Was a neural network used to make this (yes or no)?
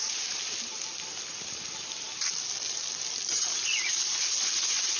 no